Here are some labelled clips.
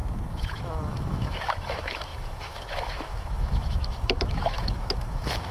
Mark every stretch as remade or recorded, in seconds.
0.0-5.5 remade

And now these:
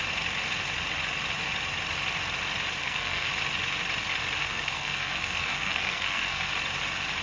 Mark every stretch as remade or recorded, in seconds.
0.0-2.8 recorded; 2.8-3.3 remade; 3.3-4.4 recorded; 4.4-6.5 remade; 6.5-7.2 recorded

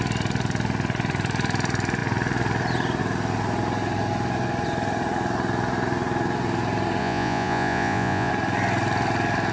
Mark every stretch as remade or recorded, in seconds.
0.0-7.0 recorded; 7.0-8.3 remade; 8.3-9.5 recorded

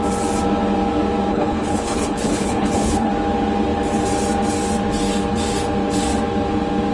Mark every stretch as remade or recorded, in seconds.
0.0-1.3 recorded; 1.3-3.1 remade; 3.1-6.9 recorded

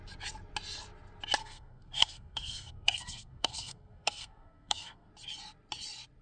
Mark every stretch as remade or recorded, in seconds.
0.0-1.4 recorded; 1.4-5.1 remade; 5.1-6.2 recorded

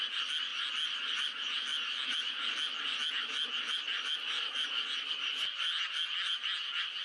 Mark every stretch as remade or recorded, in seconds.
0.0-7.0 recorded

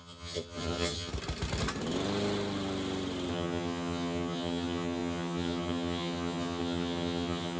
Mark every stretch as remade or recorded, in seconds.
0.0-1.1 remade; 1.1-3.3 recorded; 3.3-7.6 remade